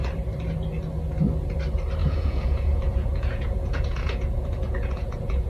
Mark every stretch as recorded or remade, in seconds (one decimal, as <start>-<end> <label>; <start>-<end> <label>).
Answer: 0.0-2.0 recorded; 2.0-5.5 remade